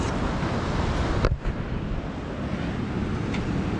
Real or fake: real